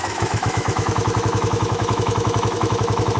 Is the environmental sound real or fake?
fake